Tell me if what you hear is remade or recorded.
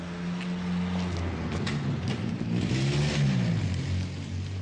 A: recorded